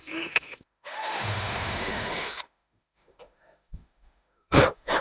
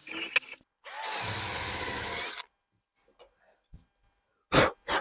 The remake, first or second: first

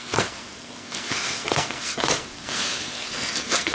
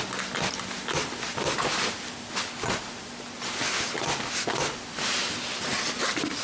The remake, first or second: first